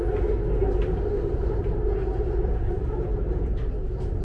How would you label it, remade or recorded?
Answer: recorded